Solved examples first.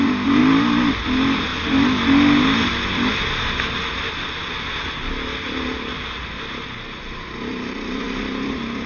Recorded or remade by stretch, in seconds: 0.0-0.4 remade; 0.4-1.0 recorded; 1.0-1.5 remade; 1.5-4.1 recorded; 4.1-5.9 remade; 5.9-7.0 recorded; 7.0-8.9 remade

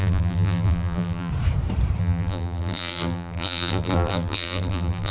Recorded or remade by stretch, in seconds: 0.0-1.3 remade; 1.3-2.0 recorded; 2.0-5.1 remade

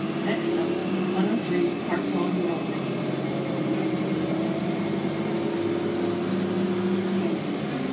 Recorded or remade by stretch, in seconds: 0.0-0.8 recorded; 0.8-1.5 remade; 1.5-1.9 recorded; 1.9-5.3 remade; 5.3-7.9 recorded

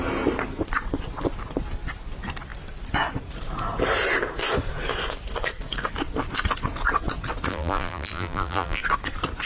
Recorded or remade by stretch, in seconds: 0.0-7.5 recorded; 7.5-8.8 remade; 8.8-9.5 recorded

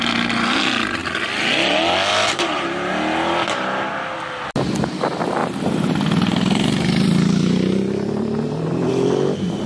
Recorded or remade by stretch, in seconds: 0.0-2.1 recorded; 2.1-2.9 remade; 2.9-5.4 recorded; 5.4-8.9 remade; 8.9-9.7 recorded